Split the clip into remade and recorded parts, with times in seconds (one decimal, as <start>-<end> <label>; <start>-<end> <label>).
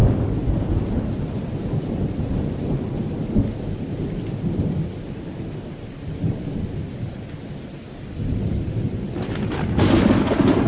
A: 0.0-10.7 recorded